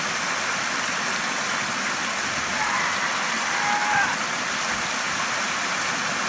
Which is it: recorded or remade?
recorded